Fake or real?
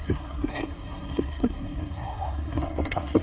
fake